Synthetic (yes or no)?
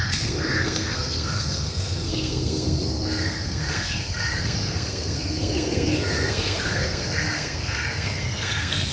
yes